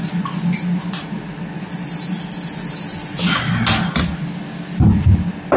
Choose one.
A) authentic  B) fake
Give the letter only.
A